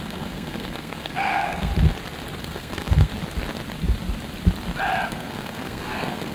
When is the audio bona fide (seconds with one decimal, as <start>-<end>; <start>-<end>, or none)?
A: 1.7-2.4; 3.1-5.1